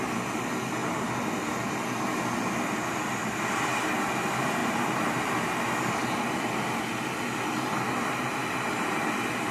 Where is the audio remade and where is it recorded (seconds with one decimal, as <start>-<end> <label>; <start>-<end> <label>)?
0.0-0.8 recorded; 0.8-1.3 remade; 1.3-4.6 recorded; 4.6-5.6 remade; 5.6-9.5 recorded